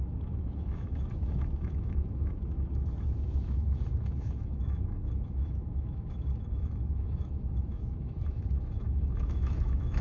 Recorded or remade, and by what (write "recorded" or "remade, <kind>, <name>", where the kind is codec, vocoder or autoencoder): remade, autoencoder, DAC-VAE